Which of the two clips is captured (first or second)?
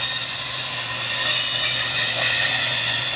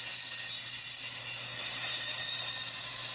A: second